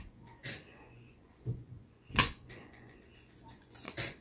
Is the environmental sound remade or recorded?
remade